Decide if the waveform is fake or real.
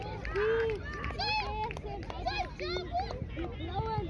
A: real